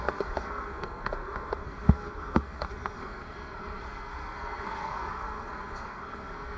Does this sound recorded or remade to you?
remade